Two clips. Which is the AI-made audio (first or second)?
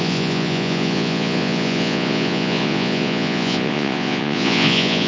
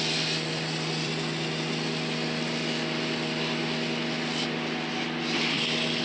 first